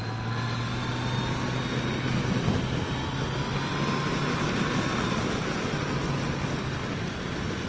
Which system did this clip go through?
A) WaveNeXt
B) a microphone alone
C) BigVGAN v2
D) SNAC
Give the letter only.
B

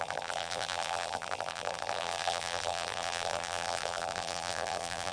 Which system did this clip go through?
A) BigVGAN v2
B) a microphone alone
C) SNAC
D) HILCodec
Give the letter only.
A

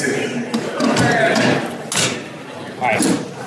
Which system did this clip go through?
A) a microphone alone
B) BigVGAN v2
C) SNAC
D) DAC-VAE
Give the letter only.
A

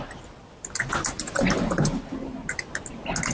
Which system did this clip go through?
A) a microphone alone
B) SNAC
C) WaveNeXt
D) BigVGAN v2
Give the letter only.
A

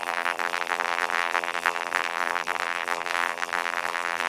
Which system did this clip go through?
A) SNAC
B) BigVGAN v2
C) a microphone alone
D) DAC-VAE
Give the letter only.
B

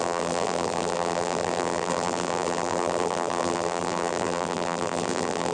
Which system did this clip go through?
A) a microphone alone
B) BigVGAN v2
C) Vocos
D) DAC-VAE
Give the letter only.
B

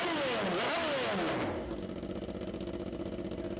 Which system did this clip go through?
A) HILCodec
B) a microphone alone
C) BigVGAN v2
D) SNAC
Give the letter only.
B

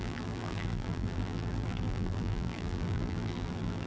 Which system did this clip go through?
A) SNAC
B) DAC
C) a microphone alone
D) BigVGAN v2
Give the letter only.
D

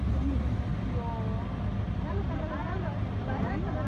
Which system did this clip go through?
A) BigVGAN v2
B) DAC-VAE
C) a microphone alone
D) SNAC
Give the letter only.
C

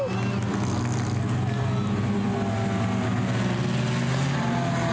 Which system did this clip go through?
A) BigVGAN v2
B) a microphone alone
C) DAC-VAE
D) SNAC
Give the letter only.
B